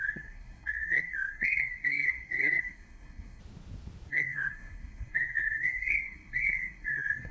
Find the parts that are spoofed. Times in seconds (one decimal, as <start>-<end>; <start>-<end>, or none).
0.0-3.4; 4.1-7.3